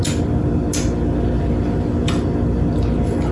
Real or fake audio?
real